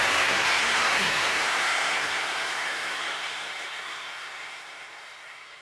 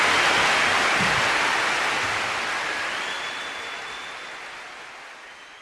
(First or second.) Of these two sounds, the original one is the second